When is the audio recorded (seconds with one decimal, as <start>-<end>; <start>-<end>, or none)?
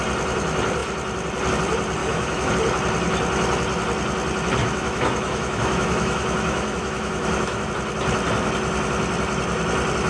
0.0-2.0; 2.5-4.6; 7.7-10.1